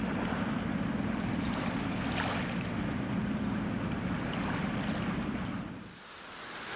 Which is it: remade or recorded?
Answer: recorded